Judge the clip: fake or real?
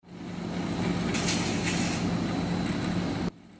real